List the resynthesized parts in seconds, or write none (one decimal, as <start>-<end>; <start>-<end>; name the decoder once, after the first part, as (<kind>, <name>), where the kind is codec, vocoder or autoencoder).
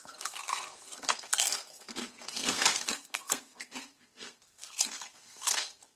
0.0-6.0 (codec, SNAC)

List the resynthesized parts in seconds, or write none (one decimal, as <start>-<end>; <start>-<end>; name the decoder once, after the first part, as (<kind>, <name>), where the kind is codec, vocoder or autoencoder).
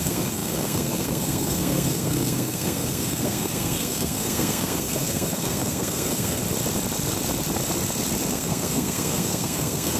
0.0-6.4 (codec, SNAC); 8.3-10.0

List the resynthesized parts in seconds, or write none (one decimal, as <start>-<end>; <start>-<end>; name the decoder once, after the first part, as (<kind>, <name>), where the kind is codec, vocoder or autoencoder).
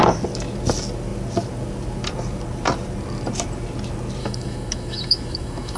4.2-5.8 (autoencoder, DAC-VAE)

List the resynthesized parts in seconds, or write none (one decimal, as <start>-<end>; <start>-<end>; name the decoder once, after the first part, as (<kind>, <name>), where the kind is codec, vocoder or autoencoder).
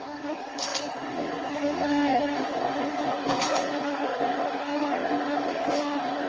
0.0-6.3 (codec, SNAC)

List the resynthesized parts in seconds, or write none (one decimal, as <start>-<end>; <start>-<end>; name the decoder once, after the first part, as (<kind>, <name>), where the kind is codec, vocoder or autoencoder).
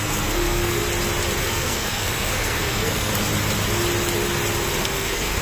0.0-0.8 (codec, SNAC); 1.4-3.1; 4.8-5.4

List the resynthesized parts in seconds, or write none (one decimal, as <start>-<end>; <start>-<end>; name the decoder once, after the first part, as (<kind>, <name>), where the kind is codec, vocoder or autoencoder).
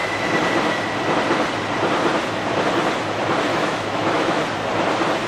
3.5-4.4 (autoencoder, DAC-VAE)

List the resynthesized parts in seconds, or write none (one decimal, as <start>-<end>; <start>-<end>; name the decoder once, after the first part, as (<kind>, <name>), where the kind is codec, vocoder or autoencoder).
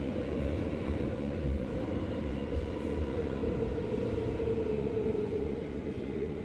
0.0-1.7 (vocoder, Vocos); 2.2-3.4; 4.7-6.4